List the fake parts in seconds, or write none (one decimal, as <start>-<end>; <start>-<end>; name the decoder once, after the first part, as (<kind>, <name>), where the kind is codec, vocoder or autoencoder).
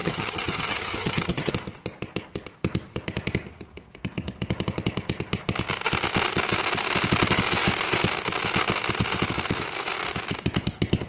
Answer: 0.0-1.5 (vocoder, HiFi-GAN)